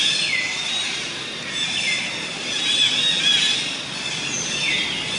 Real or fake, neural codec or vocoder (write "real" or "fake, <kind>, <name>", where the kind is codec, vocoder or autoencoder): real